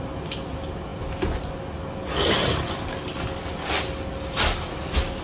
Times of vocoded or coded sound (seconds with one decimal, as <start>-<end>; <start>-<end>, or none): none